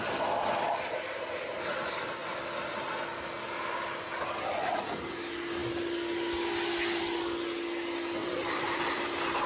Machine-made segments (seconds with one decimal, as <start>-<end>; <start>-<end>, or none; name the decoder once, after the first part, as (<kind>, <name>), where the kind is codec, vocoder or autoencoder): 8.2-9.1 (vocoder, BigVGAN v2)